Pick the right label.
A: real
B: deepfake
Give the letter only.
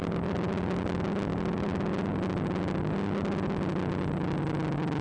A